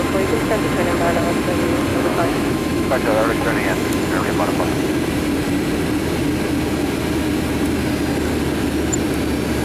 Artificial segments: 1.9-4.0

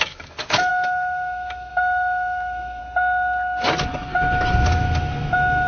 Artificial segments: 0.0-2.8; 4.8-5.7

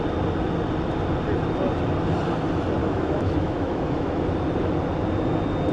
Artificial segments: 2.8-4.2

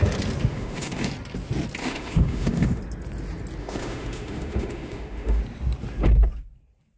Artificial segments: 0.5-1.1; 1.8-2.8; 3.6-5.4

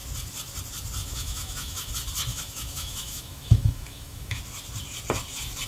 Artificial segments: 1.0-1.9; 2.3-4.4

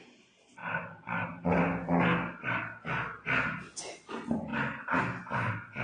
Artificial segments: none

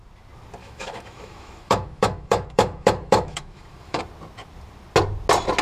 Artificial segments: 0.6-4.0